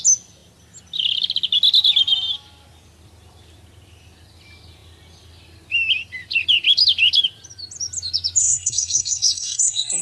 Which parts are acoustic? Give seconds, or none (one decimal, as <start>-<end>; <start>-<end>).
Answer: 0.0-8.4

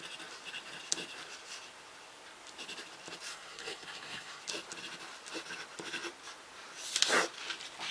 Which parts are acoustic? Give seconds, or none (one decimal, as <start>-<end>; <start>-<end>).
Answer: 0.0-3.3; 4.4-7.9

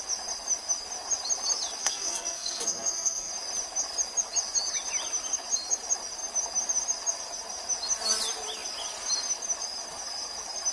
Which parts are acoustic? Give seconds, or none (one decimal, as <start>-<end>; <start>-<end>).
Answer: 0.0-1.8; 3.3-10.7

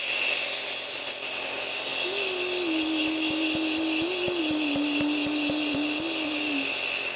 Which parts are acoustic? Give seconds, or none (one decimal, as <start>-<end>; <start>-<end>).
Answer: 0.0-7.2

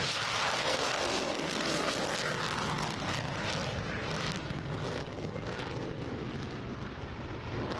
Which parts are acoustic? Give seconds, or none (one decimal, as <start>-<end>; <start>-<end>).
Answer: 0.0-0.6; 1.9-4.4; 5.6-7.8

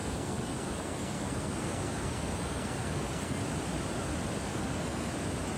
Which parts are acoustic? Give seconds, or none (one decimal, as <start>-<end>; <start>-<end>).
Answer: 3.4-4.5; 5.1-5.6